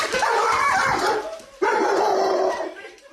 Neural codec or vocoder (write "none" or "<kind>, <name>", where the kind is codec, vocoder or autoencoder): vocoder, BigVGAN v2